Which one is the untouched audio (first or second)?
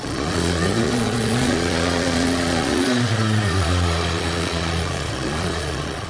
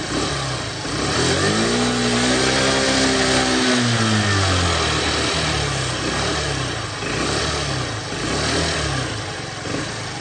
second